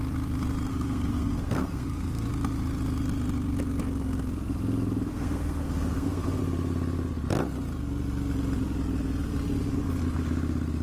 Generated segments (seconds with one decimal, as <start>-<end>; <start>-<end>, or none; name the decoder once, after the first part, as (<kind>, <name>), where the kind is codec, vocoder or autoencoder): 0.7-2.3 (codec, SNAC); 5.1-6.4